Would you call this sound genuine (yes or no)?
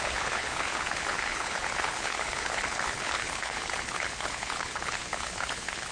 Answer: no